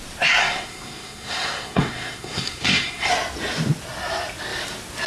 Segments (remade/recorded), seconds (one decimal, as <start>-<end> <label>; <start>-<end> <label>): 0.0-0.4 recorded; 0.4-3.1 remade; 3.1-5.1 recorded